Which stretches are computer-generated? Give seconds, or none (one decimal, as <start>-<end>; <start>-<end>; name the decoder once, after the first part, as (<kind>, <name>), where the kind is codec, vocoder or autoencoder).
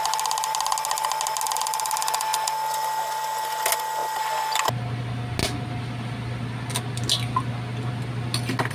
none